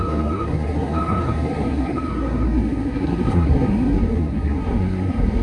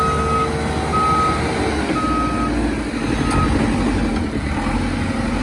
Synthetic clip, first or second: first